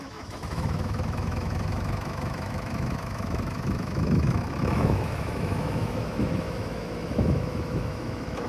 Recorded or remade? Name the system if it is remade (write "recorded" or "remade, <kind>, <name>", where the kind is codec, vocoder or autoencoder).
remade, autoencoder, DAC-VAE